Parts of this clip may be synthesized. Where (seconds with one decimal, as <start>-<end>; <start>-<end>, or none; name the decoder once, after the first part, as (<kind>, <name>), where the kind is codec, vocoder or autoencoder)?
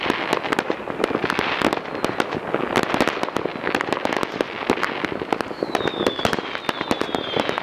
none